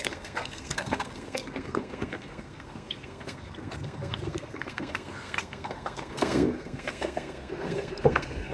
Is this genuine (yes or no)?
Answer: no